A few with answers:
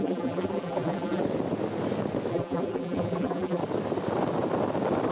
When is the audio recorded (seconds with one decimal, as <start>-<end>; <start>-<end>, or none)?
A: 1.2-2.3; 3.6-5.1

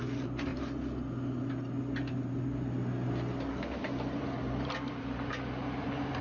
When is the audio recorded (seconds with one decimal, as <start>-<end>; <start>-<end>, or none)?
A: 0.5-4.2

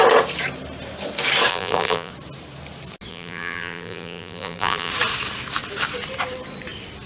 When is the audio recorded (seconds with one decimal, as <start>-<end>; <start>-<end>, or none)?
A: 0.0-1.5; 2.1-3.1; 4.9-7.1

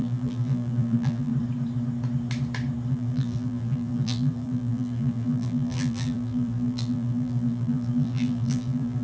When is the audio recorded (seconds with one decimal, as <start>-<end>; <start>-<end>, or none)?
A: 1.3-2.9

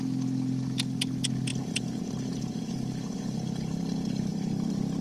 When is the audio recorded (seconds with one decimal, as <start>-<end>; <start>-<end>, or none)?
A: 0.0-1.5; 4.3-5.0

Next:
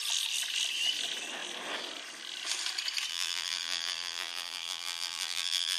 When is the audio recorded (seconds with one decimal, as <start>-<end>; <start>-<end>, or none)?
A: 0.0-3.1